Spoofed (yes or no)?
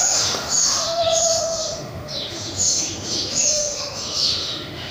yes